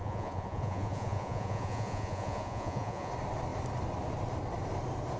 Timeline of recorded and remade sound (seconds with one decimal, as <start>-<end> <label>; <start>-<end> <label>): 0.0-3.1 remade; 3.1-5.2 recorded